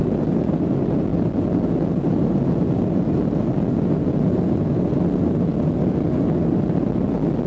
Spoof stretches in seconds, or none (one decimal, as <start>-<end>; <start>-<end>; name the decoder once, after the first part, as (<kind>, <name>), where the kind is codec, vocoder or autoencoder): none